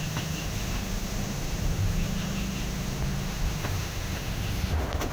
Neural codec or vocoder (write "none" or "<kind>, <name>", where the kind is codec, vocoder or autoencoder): autoencoder, DAC-VAE